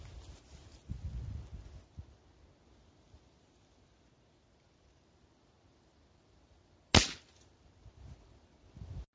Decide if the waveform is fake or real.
real